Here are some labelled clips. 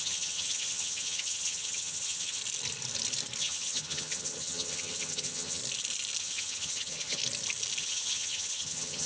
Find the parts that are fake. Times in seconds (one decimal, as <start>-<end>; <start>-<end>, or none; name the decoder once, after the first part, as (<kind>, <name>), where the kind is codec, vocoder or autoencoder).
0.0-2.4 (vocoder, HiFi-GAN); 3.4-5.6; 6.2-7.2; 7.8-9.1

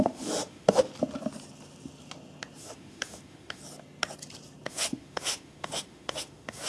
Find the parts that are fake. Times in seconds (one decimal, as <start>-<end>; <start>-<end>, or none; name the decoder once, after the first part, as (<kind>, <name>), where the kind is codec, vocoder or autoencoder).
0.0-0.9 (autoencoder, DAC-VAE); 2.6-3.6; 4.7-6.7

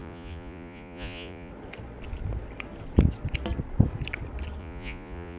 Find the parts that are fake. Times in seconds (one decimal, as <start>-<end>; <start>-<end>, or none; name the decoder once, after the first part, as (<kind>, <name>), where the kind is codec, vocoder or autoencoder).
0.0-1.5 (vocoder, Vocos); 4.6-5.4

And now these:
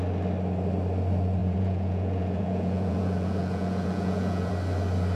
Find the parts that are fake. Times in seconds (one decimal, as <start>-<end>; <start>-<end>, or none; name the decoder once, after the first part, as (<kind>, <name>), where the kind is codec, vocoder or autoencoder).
1.4-4.5 (vocoder, Vocos)